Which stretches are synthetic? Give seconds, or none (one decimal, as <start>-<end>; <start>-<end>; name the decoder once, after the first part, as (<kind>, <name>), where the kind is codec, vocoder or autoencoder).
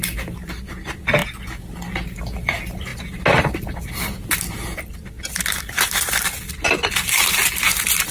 none